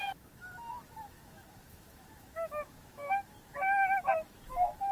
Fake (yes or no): yes